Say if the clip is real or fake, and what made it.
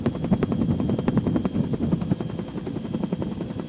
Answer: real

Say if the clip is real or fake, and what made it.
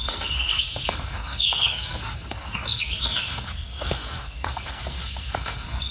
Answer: fake, codec, SNAC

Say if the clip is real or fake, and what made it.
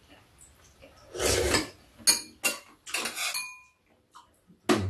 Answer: real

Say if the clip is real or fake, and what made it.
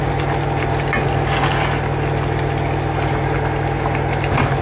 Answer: real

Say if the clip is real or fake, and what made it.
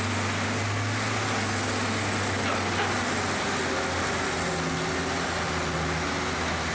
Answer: real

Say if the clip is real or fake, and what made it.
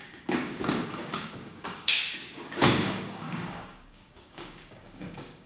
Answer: fake, codec, DAC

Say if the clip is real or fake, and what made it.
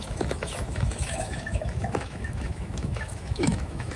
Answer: fake, autoencoder, DAC-VAE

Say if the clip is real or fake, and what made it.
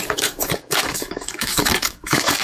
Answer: fake, codec, DAC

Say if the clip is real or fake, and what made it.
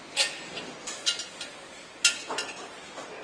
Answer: real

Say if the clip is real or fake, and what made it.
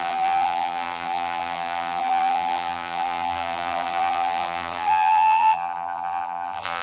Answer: fake, vocoder, BigVGAN v2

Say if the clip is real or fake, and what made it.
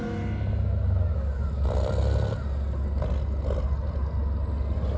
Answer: real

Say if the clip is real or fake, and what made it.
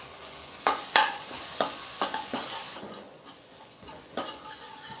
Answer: fake, vocoder, Vocos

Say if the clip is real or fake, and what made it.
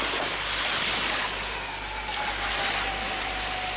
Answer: real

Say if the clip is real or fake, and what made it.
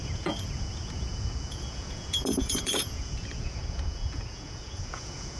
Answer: fake, vocoder, Vocos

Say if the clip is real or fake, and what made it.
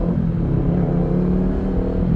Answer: real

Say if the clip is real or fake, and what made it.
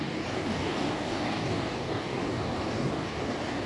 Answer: fake, codec, DAC